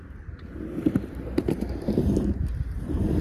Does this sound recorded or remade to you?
remade